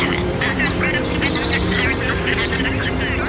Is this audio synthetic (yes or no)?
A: yes